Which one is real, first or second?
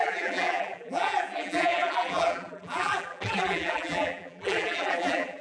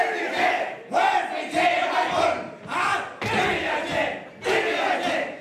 second